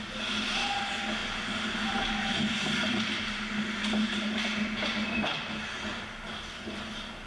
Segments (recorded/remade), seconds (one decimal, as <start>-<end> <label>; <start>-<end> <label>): 0.0-7.3 recorded

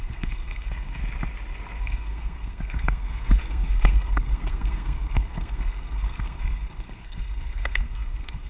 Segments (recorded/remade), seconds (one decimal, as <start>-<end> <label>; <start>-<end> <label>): 0.0-1.0 remade; 1.0-1.8 recorded; 1.8-8.5 remade

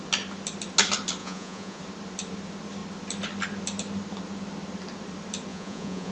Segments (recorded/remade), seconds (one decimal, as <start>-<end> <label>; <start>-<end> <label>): 0.0-1.2 recorded; 1.2-1.8 remade; 1.8-5.5 recorded; 5.5-6.1 remade